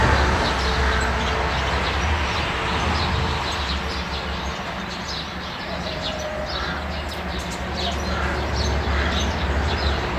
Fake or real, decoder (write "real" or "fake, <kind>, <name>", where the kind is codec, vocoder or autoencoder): real